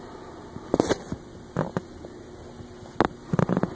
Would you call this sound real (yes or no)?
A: yes